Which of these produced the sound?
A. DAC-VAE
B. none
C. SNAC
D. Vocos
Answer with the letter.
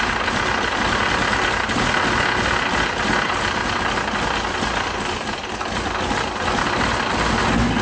B